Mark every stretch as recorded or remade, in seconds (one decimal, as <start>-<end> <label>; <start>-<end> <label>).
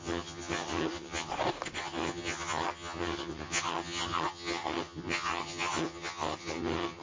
0.0-1.3 remade; 1.3-1.8 recorded; 1.8-7.0 remade